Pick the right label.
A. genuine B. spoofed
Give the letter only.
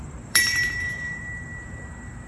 B